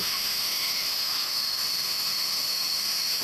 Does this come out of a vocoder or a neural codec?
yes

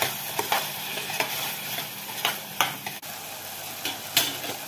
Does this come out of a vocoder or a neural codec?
no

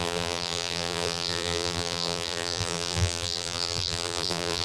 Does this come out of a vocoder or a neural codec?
yes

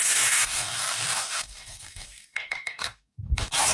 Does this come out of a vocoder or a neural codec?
yes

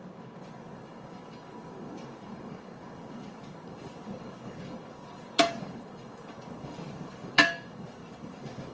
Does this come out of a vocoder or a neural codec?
yes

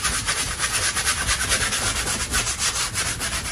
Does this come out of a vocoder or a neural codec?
no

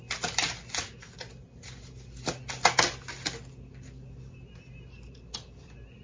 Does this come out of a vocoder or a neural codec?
no